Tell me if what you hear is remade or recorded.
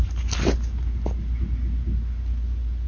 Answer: recorded